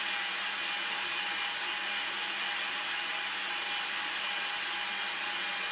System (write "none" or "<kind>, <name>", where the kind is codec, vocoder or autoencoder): none